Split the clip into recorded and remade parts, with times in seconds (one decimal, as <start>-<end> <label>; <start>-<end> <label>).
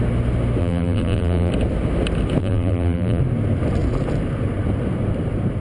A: 0.0-0.6 recorded; 0.6-1.5 remade; 1.5-2.4 recorded; 2.4-3.2 remade; 3.2-5.6 recorded